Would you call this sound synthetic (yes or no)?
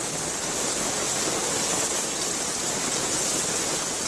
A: no